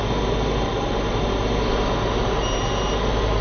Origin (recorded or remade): recorded